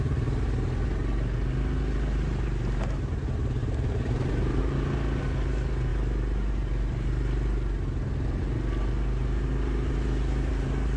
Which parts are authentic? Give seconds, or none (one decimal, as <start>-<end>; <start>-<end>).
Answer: 0.0-3.6; 4.6-11.0